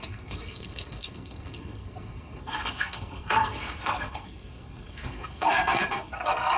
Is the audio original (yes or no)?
no